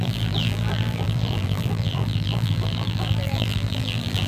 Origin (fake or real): fake